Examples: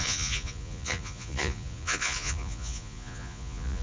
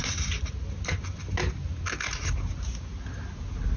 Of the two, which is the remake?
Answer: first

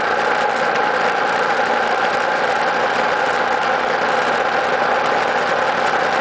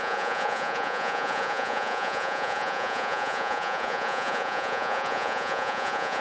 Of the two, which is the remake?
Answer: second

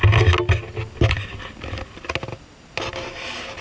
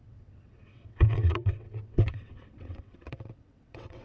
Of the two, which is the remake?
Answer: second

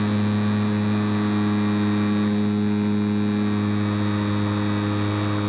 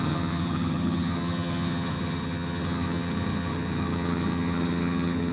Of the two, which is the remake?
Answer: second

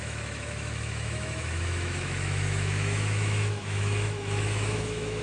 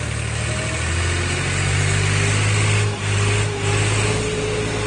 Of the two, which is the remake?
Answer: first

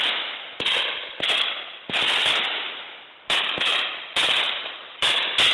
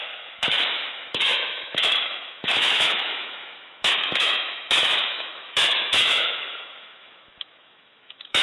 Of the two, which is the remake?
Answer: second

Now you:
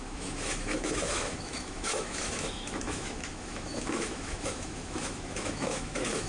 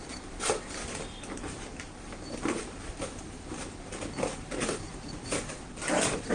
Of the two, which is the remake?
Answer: first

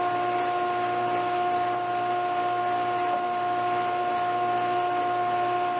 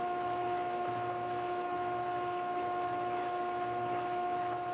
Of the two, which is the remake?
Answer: second